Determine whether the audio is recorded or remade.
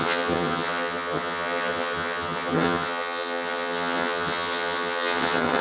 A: remade